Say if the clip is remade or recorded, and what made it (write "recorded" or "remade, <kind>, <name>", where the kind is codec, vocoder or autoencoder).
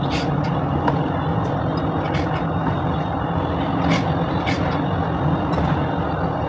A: recorded